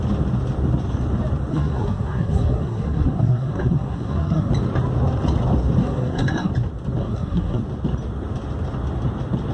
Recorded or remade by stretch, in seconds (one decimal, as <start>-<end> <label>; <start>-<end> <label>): 0.0-1.5 recorded; 1.5-4.5 remade; 4.5-5.8 recorded; 5.8-6.5 remade; 6.5-7.0 recorded; 7.0-7.6 remade; 7.6-9.5 recorded